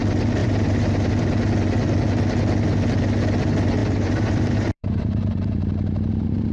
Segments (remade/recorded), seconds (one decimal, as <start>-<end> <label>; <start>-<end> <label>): 0.0-0.4 recorded; 0.4-1.1 remade; 1.1-3.8 recorded; 3.8-6.5 remade